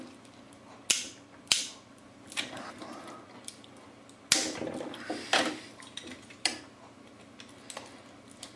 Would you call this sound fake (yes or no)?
no